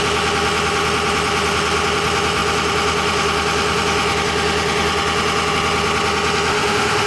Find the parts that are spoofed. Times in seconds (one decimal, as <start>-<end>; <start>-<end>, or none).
6.5-7.1